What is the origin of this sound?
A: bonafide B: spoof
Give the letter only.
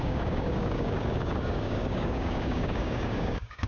B